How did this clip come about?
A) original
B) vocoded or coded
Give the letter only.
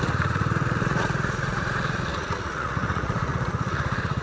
B